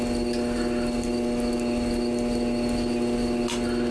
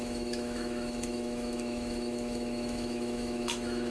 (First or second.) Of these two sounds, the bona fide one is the first